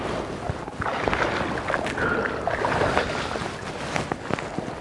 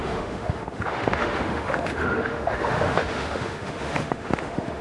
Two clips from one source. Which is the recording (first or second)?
first